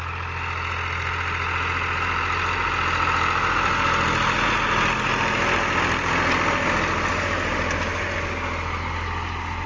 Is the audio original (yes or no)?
yes